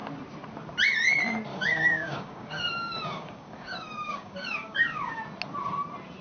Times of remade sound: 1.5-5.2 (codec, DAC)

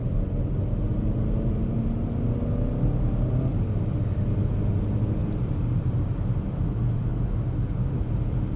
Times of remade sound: none

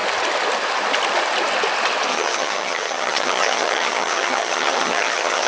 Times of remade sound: 2.1-5.5 (vocoder, HiFi-GAN)

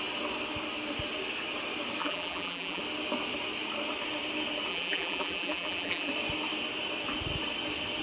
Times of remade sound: 2.0-2.8 (vocoder, BigVGAN v2); 4.7-6.1

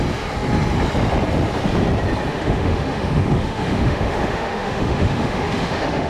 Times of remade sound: 2.3-6.1 (autoencoder, DAC-VAE)

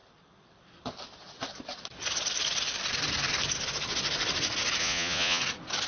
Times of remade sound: 4.8-5.4 (vocoder, Vocos)

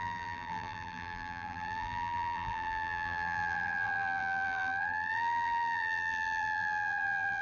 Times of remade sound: 0.0-7.4 (vocoder, BigVGAN v2)